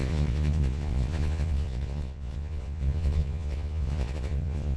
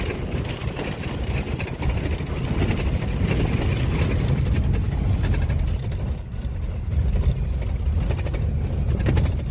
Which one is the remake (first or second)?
first